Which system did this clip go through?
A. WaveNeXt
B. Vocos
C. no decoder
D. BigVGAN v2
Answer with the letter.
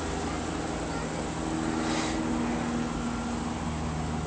C